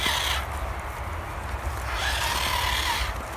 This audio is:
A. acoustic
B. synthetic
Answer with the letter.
A